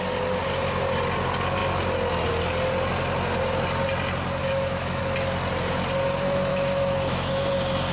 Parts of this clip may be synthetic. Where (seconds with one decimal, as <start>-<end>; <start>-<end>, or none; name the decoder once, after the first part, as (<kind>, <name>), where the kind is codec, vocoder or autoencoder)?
4.4-5.0 (autoencoder, DAC-VAE); 6.5-7.5